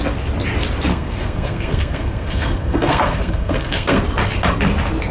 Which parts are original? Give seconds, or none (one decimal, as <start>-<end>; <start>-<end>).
0.0-0.9; 4.0-5.1